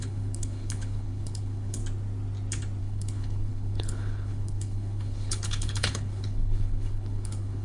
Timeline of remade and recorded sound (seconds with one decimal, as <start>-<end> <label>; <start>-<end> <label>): 0.0-1.8 remade; 1.8-2.8 recorded; 2.8-7.6 remade